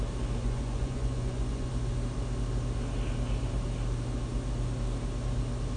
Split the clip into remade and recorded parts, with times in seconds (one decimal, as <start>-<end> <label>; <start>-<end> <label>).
0.0-0.4 recorded; 0.4-1.7 remade; 1.7-5.8 recorded